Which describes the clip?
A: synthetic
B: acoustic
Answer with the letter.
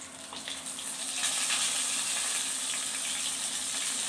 B